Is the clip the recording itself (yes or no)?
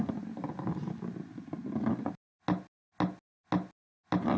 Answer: yes